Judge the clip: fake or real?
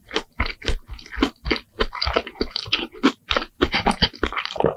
real